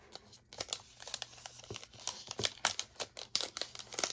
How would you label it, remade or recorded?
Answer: recorded